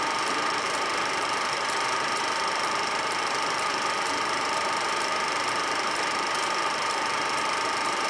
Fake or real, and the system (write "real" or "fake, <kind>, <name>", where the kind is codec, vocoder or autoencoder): fake, vocoder, BigVGAN v2